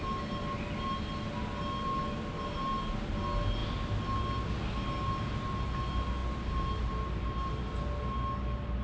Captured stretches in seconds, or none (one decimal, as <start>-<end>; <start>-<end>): 0.0-8.8